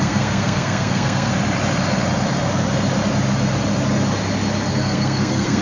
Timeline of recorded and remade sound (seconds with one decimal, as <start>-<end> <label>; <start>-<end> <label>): 0.0-1.3 remade; 1.3-4.7 recorded; 4.7-5.6 remade